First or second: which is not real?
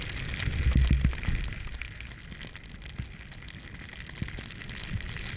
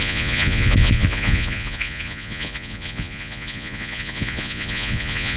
second